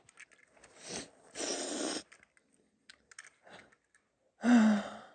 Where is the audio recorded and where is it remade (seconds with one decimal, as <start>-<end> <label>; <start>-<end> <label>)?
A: 0.0-5.1 recorded